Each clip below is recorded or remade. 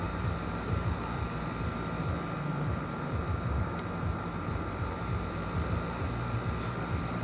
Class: remade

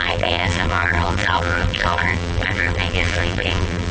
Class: remade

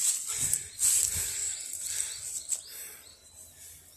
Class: recorded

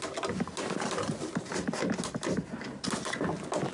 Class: recorded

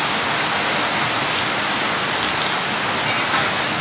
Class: recorded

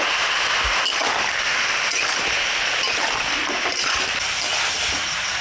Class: recorded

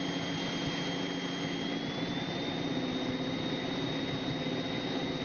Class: recorded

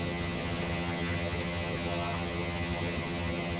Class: remade